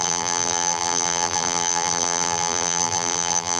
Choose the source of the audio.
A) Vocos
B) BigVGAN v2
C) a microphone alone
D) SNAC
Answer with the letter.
B